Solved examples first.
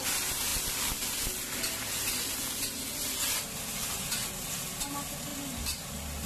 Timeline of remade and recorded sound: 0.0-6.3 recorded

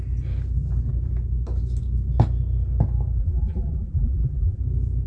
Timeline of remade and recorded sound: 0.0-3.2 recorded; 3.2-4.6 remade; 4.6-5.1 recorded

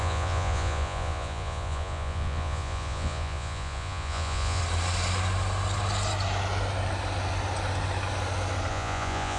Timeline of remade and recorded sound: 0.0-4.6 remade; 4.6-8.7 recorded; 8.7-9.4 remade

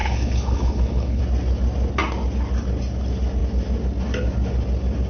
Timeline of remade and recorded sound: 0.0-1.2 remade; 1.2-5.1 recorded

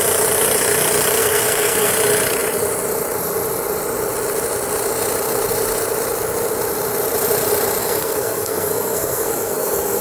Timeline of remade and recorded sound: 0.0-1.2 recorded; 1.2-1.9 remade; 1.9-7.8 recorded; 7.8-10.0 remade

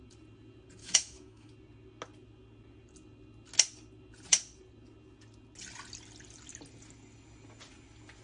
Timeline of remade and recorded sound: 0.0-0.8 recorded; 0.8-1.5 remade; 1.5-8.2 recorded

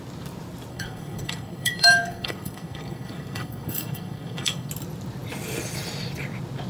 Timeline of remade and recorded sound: 0.0-0.7 recorded; 0.7-4.7 remade; 4.7-6.7 recorded